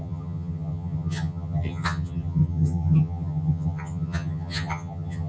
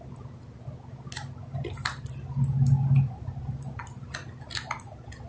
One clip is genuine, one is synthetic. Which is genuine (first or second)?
second